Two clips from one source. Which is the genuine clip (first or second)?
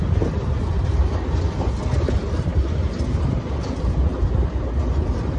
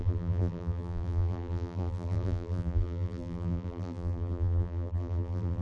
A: first